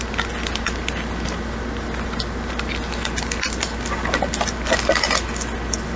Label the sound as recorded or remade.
recorded